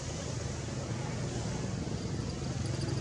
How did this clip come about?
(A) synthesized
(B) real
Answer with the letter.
B